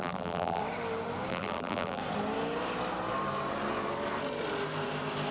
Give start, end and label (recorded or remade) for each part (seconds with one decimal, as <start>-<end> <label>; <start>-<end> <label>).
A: 0.0-0.6 remade; 0.6-1.3 recorded; 1.3-2.0 remade; 2.0-5.3 recorded